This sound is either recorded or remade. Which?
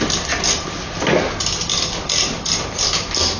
recorded